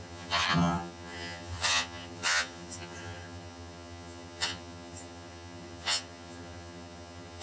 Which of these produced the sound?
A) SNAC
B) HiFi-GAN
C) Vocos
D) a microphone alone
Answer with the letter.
B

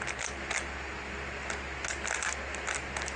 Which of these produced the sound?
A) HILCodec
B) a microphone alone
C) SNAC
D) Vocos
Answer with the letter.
B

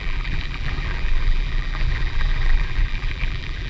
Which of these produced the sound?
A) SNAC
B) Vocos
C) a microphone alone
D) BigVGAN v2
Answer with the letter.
D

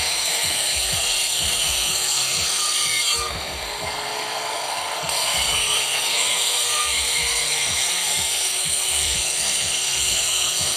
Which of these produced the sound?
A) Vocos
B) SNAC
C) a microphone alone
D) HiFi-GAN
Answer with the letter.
B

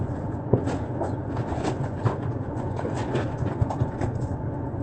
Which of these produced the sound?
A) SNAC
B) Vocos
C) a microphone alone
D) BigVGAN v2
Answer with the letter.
B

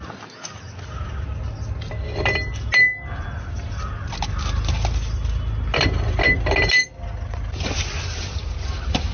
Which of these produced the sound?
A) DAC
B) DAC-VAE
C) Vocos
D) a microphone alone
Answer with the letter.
D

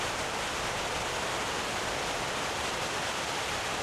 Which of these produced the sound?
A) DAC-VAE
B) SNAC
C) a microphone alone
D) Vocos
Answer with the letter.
C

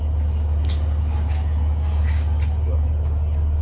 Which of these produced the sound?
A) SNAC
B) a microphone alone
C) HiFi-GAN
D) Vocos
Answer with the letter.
B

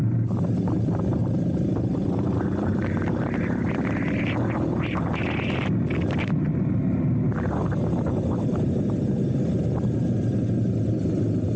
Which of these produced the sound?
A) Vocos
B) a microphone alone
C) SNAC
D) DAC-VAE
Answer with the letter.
B